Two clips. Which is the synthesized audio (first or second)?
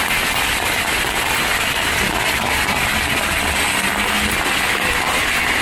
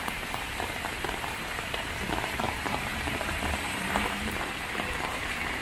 second